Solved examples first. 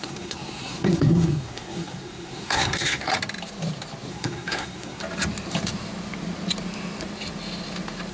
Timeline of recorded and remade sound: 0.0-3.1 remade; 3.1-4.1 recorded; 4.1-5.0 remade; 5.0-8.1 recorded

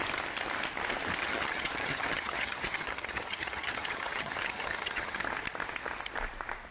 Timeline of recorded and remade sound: 0.0-1.2 recorded; 1.2-5.2 remade; 5.2-6.7 recorded

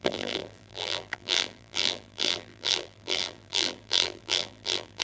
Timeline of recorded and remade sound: 0.0-5.0 remade

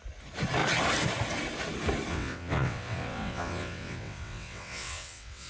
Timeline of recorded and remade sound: 0.0-2.1 recorded; 2.1-5.5 remade

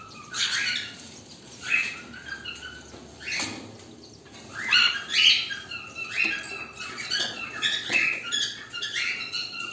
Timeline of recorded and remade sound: 0.0-0.6 remade; 0.6-1.4 recorded; 1.4-1.9 remade; 1.9-6.8 recorded; 6.8-9.7 remade

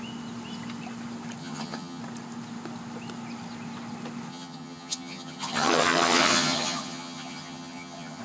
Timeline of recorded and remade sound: 0.0-1.4 recorded; 1.4-2.0 remade; 2.0-4.3 recorded; 4.3-8.2 remade

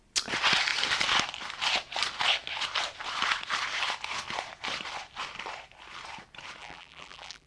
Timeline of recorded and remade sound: 0.0-6.6 recorded; 6.6-7.5 remade

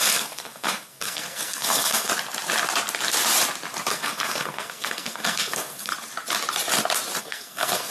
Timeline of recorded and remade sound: 0.0-2.1 remade; 2.1-3.9 recorded; 3.9-5.9 remade; 5.9-7.2 recorded; 7.2-7.9 remade